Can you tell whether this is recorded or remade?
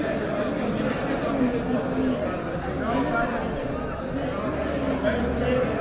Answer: recorded